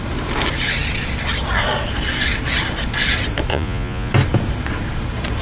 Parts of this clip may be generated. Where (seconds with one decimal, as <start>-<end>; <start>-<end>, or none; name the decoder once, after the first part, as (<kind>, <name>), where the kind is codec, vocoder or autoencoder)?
3.5-4.1 (vocoder, Vocos)